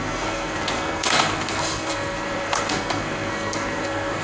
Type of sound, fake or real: fake